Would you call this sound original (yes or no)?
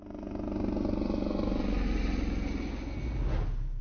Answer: yes